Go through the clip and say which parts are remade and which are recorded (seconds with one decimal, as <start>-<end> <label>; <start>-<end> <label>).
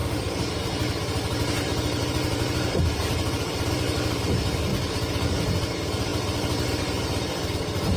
0.0-4.7 remade; 4.7-5.4 recorded; 5.4-8.0 remade